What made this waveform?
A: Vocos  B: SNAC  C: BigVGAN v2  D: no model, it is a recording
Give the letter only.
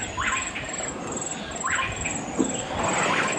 D